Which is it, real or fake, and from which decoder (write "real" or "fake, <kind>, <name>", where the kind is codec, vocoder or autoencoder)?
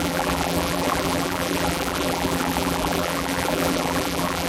fake, vocoder, BigVGAN v2